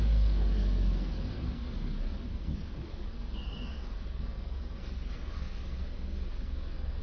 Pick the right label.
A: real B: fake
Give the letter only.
B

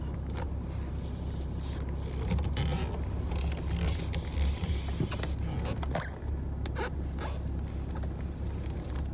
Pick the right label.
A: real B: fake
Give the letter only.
A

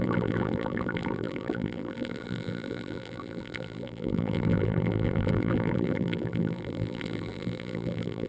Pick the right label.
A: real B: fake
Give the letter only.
B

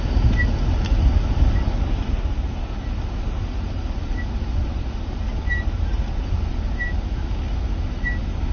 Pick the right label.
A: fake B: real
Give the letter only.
B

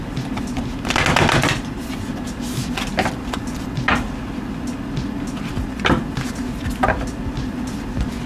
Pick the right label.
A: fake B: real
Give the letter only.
B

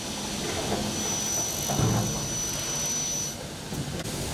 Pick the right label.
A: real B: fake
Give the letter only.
A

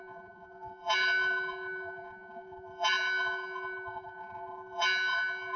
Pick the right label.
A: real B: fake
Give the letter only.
B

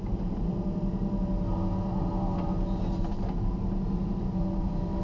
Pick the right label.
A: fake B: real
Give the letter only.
A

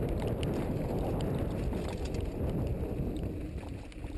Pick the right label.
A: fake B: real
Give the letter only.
B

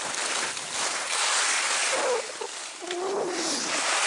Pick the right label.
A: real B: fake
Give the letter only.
A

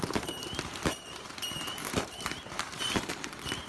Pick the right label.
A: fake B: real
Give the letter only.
A